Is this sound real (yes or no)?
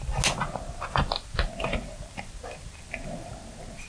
yes